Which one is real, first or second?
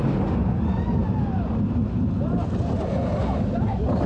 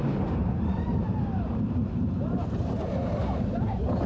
first